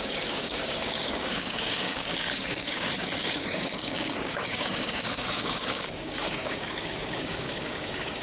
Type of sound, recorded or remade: remade